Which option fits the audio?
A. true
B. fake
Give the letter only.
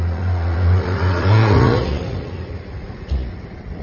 B